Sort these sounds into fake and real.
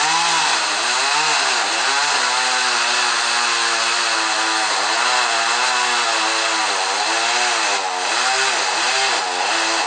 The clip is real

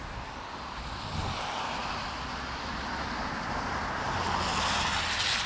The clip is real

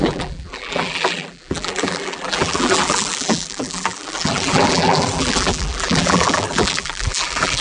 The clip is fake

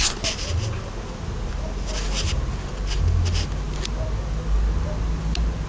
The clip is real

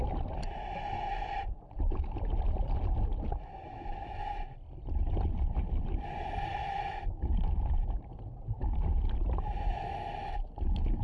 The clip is real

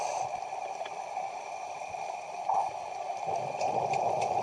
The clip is fake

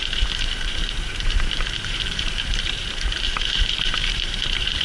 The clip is fake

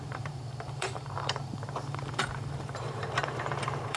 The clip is fake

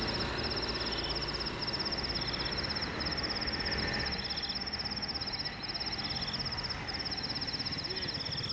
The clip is real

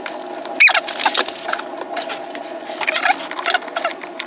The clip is real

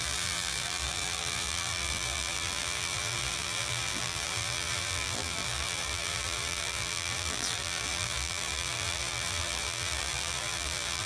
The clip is fake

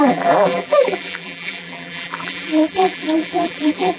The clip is fake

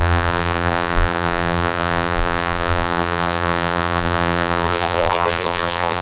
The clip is fake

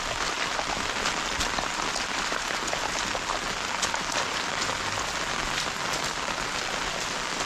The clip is real